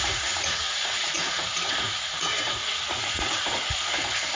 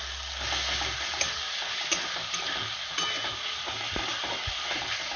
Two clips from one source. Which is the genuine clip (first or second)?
second